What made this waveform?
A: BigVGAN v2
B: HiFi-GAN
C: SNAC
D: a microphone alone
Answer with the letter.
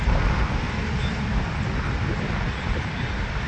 D